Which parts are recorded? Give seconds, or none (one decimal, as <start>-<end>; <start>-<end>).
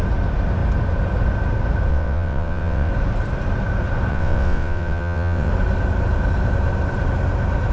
0.0-1.9; 2.9-4.1; 5.5-7.7